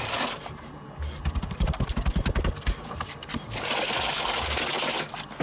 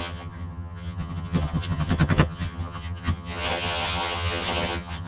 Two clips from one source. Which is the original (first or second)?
first